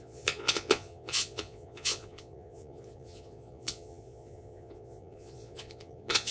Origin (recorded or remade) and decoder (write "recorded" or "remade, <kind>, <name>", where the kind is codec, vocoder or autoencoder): remade, vocoder, Vocos